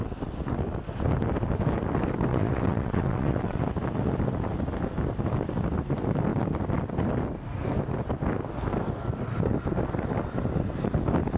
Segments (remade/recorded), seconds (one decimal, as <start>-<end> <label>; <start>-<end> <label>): 0.0-2.3 recorded; 2.3-3.6 remade; 3.6-11.4 recorded

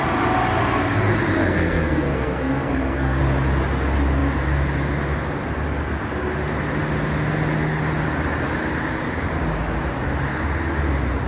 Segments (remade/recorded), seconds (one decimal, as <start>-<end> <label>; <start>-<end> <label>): 0.0-1.4 recorded; 1.4-3.2 remade; 3.2-11.3 recorded